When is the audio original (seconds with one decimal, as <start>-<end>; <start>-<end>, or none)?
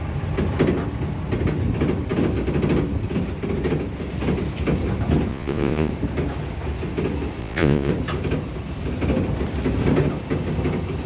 0.0-5.3; 5.9-7.4; 7.9-11.1